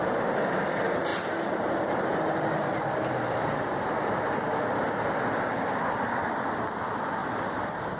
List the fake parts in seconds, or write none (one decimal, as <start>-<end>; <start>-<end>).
7.2-8.0